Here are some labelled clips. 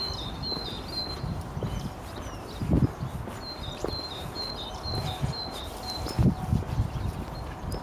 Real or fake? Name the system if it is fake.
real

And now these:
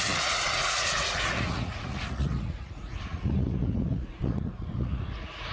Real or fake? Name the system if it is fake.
fake, vocoder, Vocos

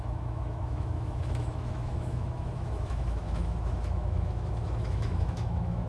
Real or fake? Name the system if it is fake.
fake, autoencoder, DAC-VAE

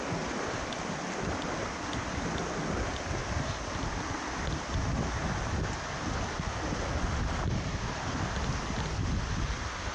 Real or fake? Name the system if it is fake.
real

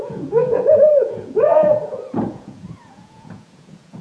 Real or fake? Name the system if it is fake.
fake, vocoder, Vocos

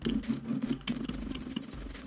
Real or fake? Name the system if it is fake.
real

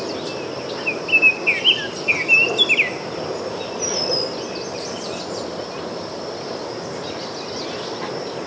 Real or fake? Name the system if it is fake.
real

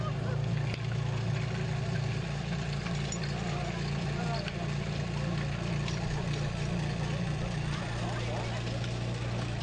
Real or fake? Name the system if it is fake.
real